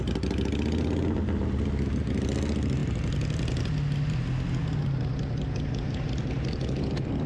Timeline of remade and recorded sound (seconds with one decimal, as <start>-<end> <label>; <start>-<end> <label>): 0.0-7.3 recorded